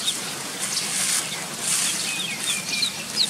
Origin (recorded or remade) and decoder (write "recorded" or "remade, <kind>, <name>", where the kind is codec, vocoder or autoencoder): recorded